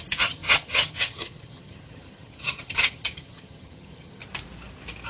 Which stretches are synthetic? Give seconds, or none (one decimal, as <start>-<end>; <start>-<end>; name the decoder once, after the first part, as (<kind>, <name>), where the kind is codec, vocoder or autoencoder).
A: 0.0-4.2 (vocoder, HiFi-GAN)

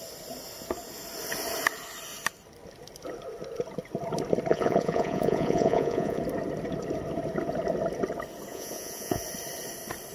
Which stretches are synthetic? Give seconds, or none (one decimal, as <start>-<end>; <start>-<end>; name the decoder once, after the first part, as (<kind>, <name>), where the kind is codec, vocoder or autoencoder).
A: 4.5-6.2 (vocoder, Vocos); 8.5-9.2

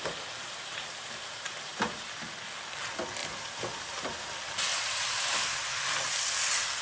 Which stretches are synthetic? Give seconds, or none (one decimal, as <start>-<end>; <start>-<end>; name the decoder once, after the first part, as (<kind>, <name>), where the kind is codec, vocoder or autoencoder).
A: 0.4-2.3 (vocoder, BigVGAN v2); 3.2-4.2; 4.7-6.1

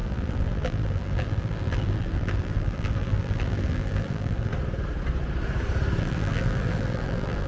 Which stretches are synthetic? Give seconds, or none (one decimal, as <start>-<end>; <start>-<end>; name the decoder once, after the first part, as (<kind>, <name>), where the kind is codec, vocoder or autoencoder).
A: 0.0-4.5 (vocoder, BigVGAN v2); 6.0-7.5

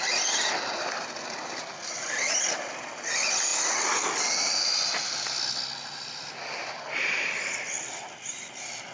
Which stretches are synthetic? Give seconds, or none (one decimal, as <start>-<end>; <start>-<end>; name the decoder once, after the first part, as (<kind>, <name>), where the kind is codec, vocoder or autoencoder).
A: none

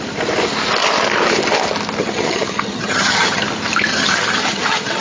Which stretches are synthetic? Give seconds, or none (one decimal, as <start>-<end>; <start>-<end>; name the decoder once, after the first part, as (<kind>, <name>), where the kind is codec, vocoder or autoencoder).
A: 2.0-3.4 (vocoder, HiFi-GAN); 3.9-5.0